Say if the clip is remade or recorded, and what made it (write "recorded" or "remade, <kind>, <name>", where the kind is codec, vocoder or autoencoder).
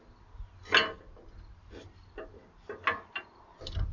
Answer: recorded